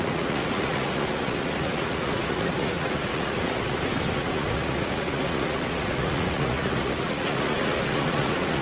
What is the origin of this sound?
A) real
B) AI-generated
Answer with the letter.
B